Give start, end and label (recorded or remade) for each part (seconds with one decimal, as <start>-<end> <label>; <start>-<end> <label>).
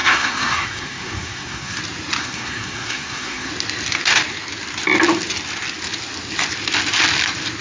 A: 0.0-1.8 remade; 1.8-2.2 recorded; 2.2-3.5 remade; 3.5-7.6 recorded